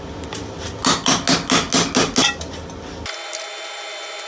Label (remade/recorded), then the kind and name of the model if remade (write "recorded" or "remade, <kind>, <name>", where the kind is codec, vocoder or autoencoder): recorded